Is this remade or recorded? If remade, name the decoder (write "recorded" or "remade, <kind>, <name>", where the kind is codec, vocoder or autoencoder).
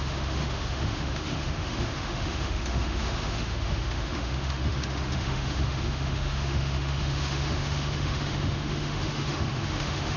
remade, autoencoder, DAC-VAE